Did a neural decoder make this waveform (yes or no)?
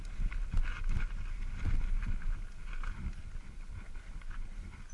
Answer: no